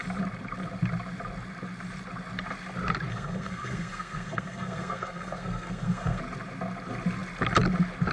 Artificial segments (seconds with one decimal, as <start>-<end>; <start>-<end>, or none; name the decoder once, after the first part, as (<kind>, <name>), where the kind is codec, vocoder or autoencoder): 3.1-6.2 (codec, SNAC)